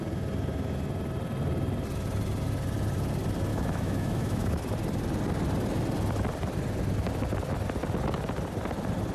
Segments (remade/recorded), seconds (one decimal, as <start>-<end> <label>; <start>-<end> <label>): 0.0-3.5 recorded; 3.5-4.5 remade; 4.5-9.1 recorded